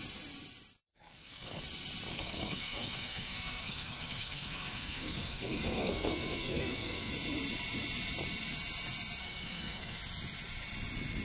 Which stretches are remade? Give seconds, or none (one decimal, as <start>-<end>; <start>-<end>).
0.9-1.6; 2.1-7.1; 9.2-10.0